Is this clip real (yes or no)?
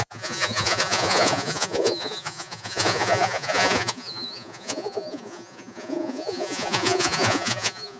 no